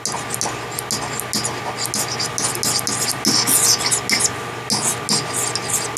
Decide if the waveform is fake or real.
real